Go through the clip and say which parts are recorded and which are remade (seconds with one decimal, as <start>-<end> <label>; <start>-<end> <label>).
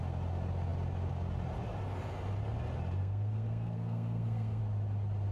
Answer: 0.0-3.0 recorded; 3.0-4.6 remade; 4.6-5.3 recorded